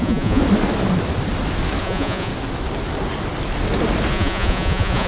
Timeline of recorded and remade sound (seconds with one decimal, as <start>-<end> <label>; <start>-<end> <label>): 0.0-0.4 remade; 0.4-1.8 recorded; 1.8-2.3 remade; 2.3-4.1 recorded; 4.1-5.1 remade